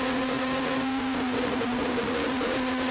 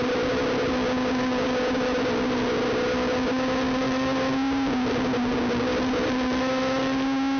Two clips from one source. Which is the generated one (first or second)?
first